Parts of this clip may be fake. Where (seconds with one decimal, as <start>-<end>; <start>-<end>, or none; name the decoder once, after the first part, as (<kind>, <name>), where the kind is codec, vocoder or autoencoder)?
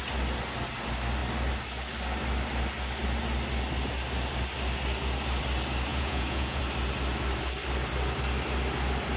5.9-6.6 (vocoder, Vocos)